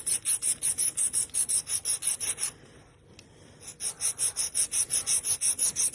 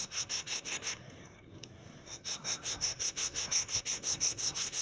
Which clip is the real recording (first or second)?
first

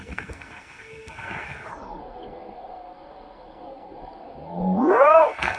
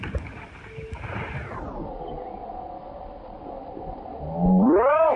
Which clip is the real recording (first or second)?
second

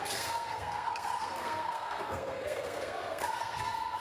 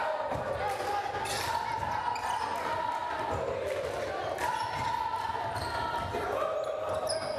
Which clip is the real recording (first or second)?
second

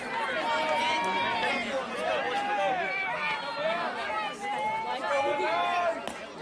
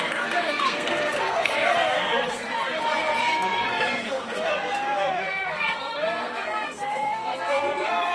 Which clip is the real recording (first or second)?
first